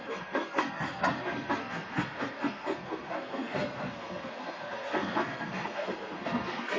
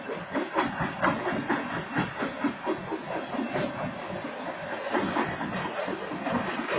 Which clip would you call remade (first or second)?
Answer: first